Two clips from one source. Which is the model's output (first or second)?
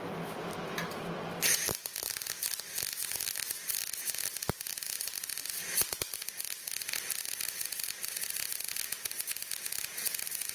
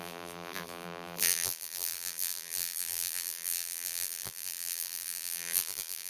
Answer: second